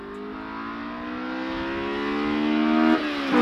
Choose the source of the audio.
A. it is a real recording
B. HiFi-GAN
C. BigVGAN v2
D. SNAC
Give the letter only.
A